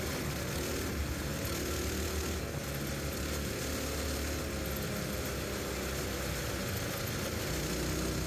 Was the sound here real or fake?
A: real